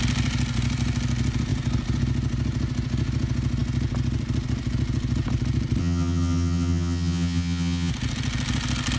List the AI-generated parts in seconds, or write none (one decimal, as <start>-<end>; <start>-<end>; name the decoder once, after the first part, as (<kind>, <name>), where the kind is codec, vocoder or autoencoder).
5.8-7.9 (vocoder, HiFi-GAN)